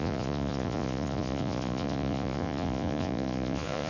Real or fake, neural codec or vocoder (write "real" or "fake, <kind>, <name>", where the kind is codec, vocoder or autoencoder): fake, vocoder, Vocos